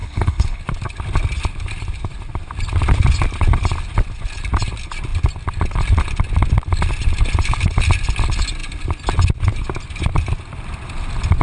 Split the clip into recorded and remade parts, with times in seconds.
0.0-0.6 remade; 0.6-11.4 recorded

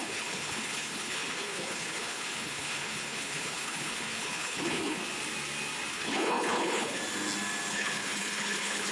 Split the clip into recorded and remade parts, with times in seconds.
0.0-5.0 remade; 5.0-5.9 recorded; 5.9-7.0 remade; 7.0-7.7 recorded; 7.7-8.9 remade

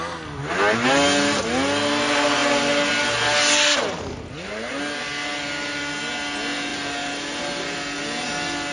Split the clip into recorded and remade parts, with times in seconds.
0.0-8.7 recorded

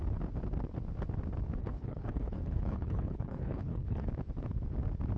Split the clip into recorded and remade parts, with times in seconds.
0.0-1.6 recorded; 1.6-4.1 remade; 4.1-5.2 recorded

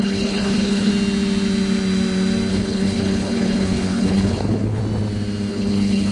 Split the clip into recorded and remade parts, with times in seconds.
0.0-0.9 remade; 0.9-2.5 recorded; 2.5-4.8 remade; 4.8-5.5 recorded; 5.5-6.1 remade

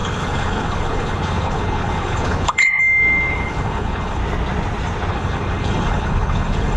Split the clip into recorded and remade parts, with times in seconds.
0.0-2.8 remade; 2.8-3.3 recorded; 3.3-4.2 remade; 4.2-5.1 recorded; 5.1-6.8 remade

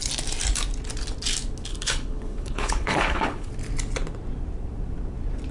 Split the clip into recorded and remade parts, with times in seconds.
0.0-1.7 recorded; 1.7-3.5 remade; 3.5-5.5 recorded

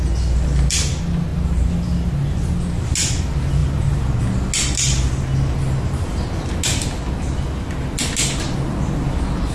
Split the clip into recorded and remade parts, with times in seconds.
0.0-9.5 recorded